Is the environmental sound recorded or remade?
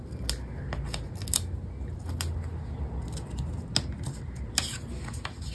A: recorded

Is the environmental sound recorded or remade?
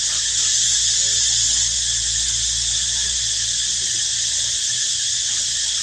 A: recorded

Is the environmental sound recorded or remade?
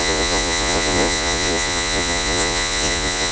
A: remade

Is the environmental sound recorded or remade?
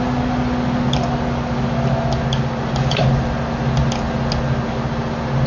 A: recorded